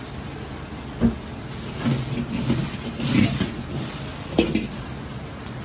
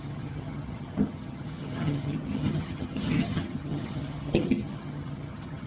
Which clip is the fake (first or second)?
second